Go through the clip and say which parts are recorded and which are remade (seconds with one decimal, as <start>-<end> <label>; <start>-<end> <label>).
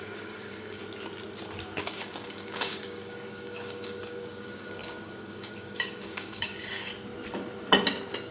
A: 0.0-0.8 remade; 0.8-1.8 recorded; 1.8-6.9 remade; 6.9-8.3 recorded